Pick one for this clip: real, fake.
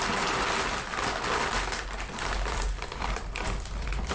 real